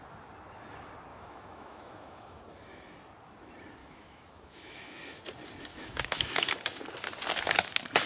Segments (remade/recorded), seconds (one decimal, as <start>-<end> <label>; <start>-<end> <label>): 0.0-1.1 recorded; 1.1-2.4 remade; 2.4-3.8 recorded; 3.8-5.2 remade; 5.2-5.7 recorded; 5.7-6.5 remade; 6.5-8.1 recorded